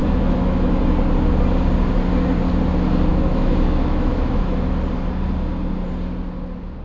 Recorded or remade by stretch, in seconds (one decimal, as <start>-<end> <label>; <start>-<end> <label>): 0.0-0.8 remade; 0.8-3.1 recorded; 3.1-4.5 remade; 4.5-6.8 recorded